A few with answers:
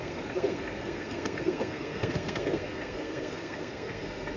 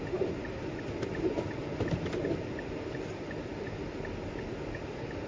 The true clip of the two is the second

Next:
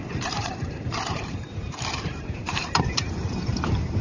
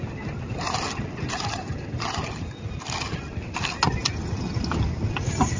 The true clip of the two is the second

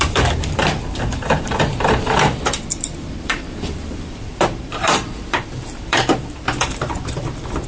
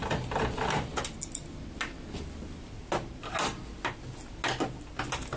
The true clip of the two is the second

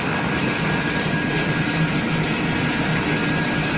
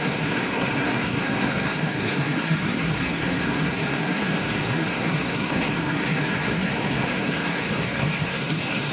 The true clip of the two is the first